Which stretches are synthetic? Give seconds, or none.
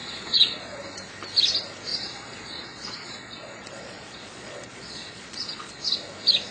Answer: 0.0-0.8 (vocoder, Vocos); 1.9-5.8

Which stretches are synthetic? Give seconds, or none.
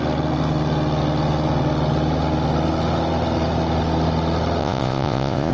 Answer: 4.6-5.5 (vocoder, Vocos)